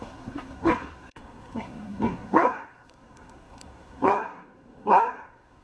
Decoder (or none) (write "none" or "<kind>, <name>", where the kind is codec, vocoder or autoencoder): codec, SNAC